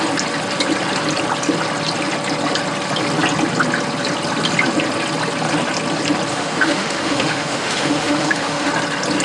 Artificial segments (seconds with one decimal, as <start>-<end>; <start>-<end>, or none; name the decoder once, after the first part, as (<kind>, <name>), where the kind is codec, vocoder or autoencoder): 6.3-8.7 (autoencoder, DAC-VAE)